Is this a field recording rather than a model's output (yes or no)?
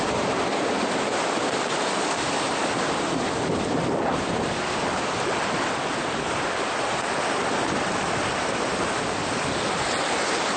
yes